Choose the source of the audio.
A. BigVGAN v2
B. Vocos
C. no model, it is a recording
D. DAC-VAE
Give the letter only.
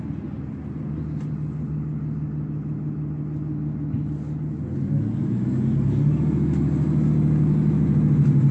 C